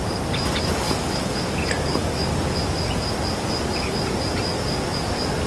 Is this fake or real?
real